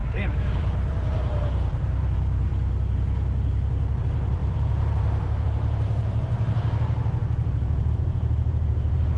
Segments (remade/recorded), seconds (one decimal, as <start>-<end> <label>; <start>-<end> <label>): 0.0-2.5 remade; 2.5-4.0 recorded; 4.0-9.2 remade